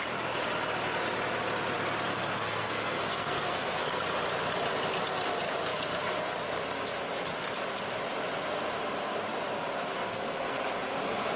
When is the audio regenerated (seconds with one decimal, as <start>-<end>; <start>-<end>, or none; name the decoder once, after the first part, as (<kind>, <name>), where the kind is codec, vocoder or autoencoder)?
2.1-4.0 (codec, SNAC); 9.9-10.6